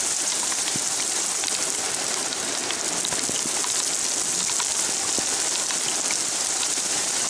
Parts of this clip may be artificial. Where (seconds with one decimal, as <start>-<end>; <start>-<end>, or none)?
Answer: 0.0-2.6; 6.3-7.3